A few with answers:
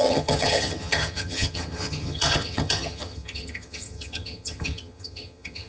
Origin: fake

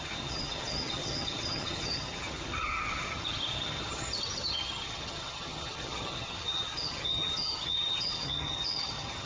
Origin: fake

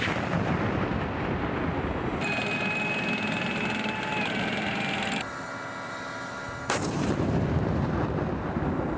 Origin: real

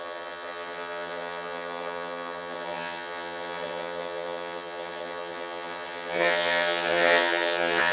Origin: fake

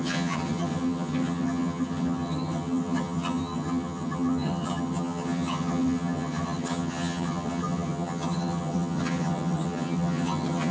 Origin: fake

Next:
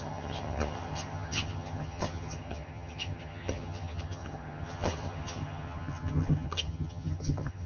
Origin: fake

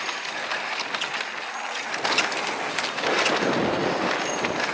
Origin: real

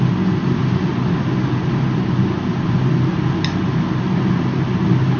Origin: real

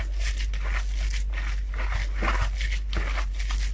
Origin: real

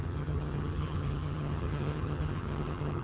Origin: fake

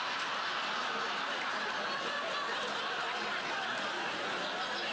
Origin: real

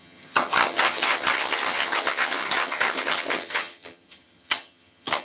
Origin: fake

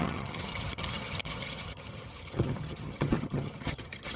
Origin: fake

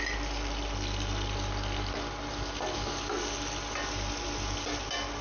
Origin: real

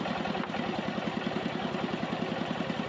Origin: real